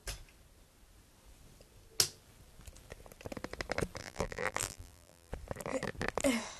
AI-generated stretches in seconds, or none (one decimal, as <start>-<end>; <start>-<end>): 4.0-5.3